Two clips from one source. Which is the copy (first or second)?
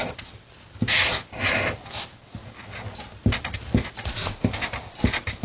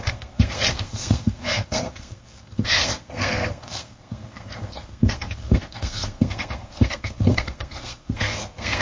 second